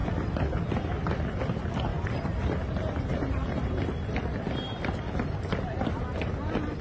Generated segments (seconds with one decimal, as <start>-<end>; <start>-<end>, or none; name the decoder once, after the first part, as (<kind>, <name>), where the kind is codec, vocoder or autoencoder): 1.9-3.7 (vocoder, BigVGAN v2)